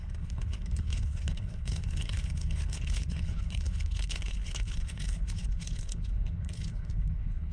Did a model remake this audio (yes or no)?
yes